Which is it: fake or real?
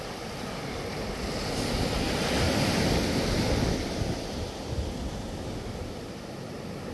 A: real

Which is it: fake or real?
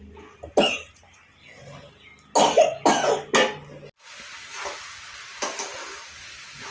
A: real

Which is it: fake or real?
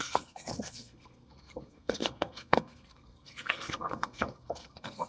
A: fake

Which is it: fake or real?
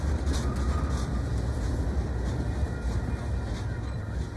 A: real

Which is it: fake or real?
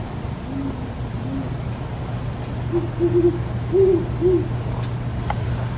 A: real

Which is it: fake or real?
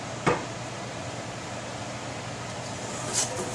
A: real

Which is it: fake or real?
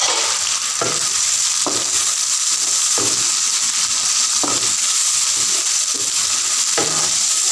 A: real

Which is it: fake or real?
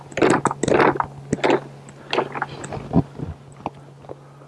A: real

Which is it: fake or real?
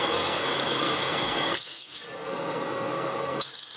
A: fake